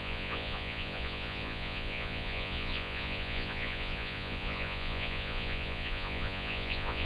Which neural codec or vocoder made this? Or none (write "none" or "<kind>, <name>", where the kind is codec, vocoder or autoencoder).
vocoder, Vocos